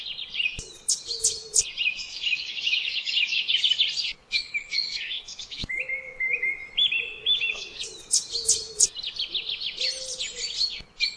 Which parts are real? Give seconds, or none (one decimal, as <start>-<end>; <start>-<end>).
0.0-1.9; 3.5-4.2; 5.8-7.2; 7.8-11.2